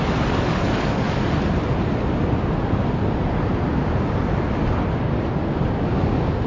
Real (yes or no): yes